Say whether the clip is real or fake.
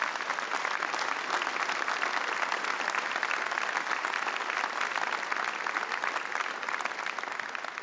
real